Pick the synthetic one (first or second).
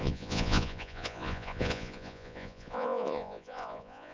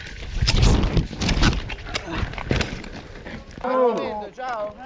first